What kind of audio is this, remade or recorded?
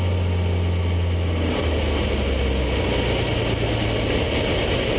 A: recorded